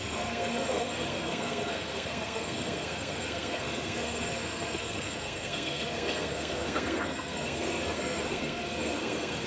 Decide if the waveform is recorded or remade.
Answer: remade